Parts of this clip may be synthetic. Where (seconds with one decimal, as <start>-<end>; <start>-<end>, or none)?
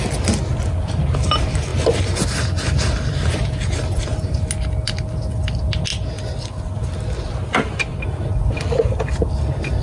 none